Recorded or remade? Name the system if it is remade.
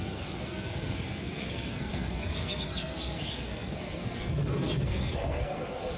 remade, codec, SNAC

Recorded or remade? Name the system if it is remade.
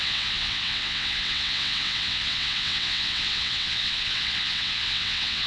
remade, vocoder, WaveNeXt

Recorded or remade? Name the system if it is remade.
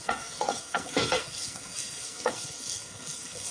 remade, codec, SNAC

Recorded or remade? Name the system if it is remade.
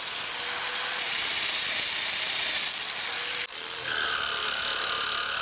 recorded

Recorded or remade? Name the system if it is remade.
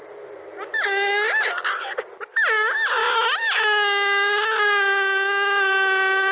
recorded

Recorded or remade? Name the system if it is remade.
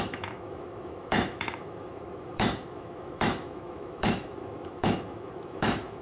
remade, autoencoder, DAC-VAE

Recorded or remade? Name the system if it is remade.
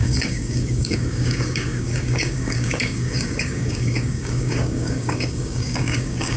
remade, codec, DAC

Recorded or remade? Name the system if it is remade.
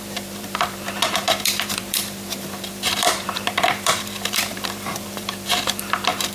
remade, vocoder, BigVGAN v2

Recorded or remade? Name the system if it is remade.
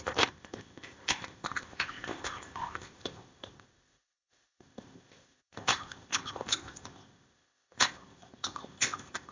remade, codec, ZipCodec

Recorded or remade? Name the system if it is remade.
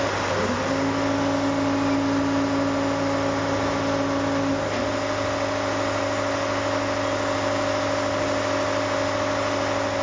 recorded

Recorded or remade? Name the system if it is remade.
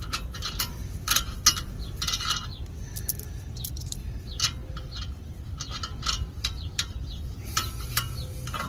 recorded